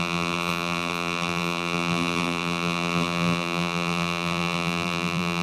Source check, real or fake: fake